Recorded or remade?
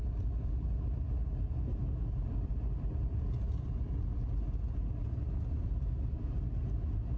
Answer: recorded